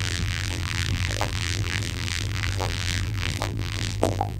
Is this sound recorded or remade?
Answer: remade